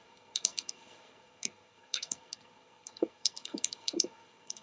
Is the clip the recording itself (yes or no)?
no